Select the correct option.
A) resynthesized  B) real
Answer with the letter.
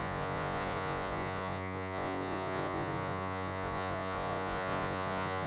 A